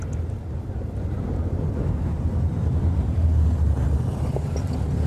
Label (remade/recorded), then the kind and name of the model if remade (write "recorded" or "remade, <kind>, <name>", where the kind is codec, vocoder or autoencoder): recorded